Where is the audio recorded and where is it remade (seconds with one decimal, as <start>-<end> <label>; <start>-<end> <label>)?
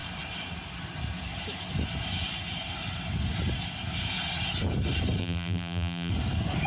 0.0-5.2 recorded; 5.2-6.1 remade; 6.1-6.7 recorded